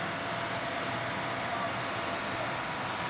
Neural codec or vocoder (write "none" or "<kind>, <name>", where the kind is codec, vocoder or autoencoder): none